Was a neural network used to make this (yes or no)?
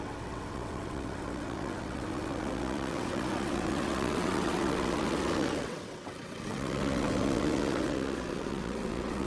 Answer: yes